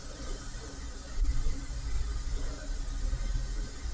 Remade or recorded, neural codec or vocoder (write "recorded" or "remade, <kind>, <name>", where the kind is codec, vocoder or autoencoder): recorded